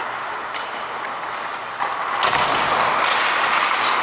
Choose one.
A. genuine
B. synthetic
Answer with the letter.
A